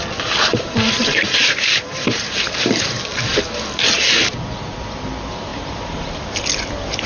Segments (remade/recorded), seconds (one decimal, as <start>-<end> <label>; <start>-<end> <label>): 0.0-0.5 recorded; 0.5-2.8 remade; 2.8-5.5 recorded; 5.5-6.4 remade; 6.4-7.1 recorded